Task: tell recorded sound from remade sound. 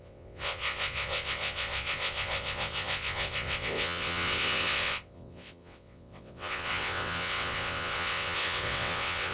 remade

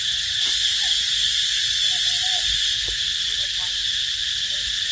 recorded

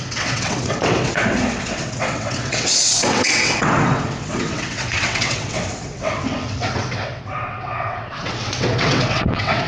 remade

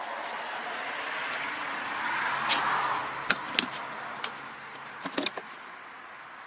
recorded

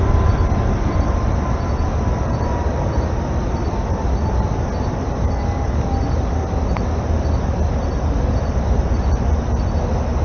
recorded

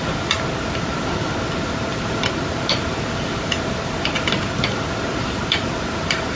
recorded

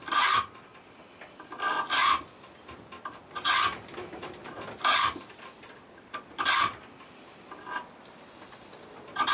recorded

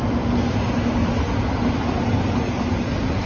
recorded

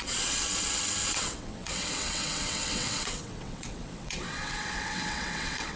remade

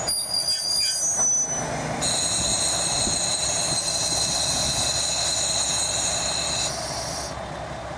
recorded